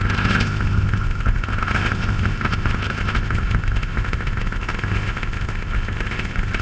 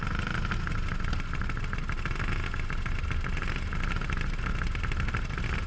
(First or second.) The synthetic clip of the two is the first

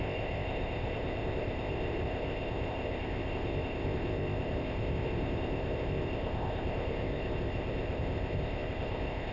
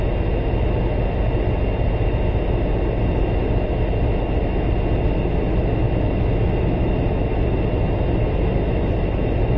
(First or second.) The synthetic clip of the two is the first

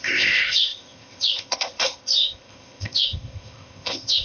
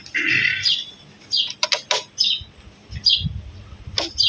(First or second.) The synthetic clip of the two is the first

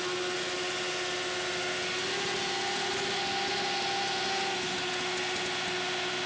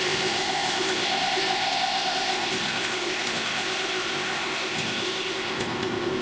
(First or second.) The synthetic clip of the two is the second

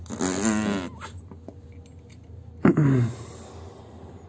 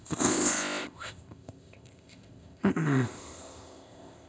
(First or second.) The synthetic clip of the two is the second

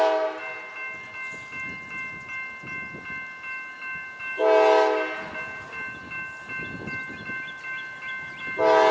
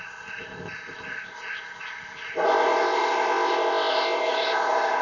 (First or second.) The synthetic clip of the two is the second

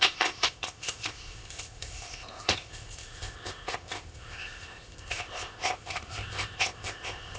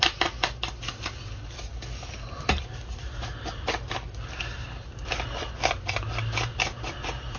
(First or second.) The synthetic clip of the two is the first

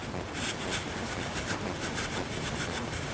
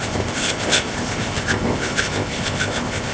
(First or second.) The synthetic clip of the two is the second